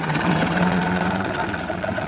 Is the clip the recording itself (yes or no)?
no